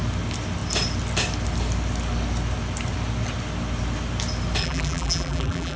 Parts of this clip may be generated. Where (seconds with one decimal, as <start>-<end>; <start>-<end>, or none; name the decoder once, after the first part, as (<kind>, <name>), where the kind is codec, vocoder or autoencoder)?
4.6-5.8 (vocoder, BigVGAN v2)